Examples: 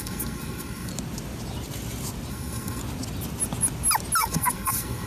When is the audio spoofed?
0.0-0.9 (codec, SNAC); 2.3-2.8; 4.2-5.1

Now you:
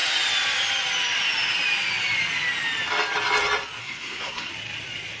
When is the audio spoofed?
3.8-4.5 (codec, SNAC)

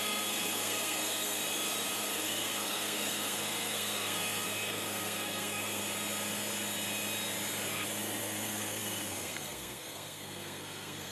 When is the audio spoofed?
0.0-1.4 (codec, SNAC); 2.0-5.8; 8.2-11.1

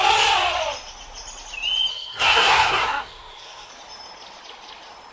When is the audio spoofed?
1.9-3.7 (codec, SNAC)